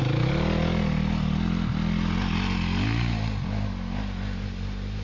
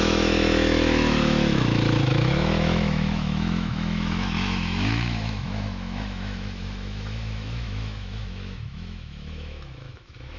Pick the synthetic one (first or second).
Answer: second